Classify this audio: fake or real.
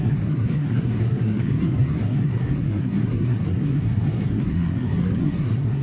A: fake